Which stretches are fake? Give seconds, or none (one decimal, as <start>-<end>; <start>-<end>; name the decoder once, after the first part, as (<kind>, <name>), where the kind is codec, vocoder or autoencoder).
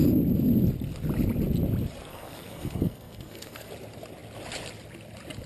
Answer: 2.1-3.7 (codec, SNAC)